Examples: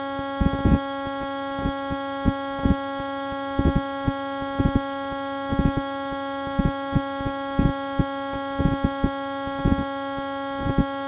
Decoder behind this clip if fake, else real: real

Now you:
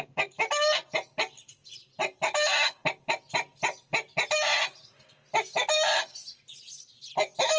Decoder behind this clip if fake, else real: real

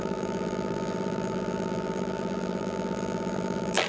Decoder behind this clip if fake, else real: fake, vocoder, BigVGAN v2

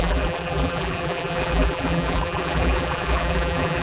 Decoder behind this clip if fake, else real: fake, vocoder, BigVGAN v2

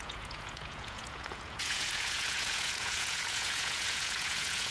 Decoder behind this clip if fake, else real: fake, vocoder, Vocos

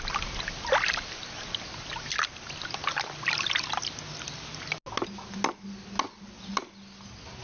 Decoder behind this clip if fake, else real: real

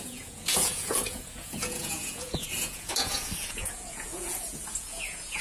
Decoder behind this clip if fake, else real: fake, vocoder, Vocos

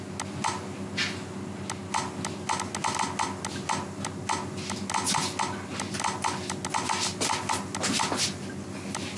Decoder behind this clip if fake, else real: real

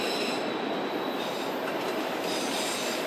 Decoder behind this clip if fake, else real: real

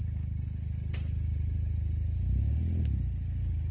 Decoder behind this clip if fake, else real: real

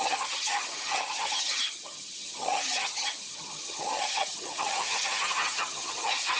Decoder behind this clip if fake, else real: fake, vocoder, HiFi-GAN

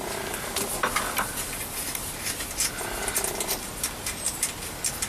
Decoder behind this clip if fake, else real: real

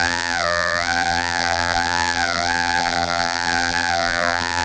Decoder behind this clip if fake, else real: fake, vocoder, BigVGAN v2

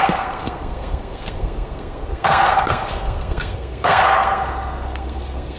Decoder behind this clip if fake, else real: fake, codec, SNAC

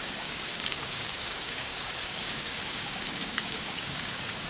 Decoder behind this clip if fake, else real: fake, codec, DAC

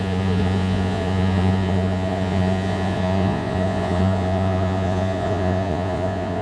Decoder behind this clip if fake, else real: fake, vocoder, Vocos